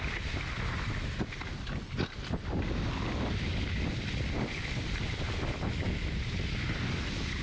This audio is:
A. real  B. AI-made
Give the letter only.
A